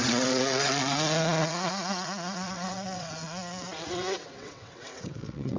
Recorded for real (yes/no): no